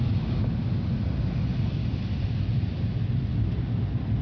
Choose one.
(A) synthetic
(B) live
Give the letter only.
B